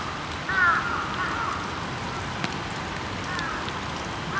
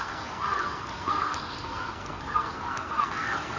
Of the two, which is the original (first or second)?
first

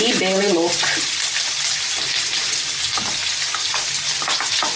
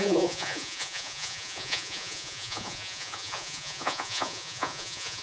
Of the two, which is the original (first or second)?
first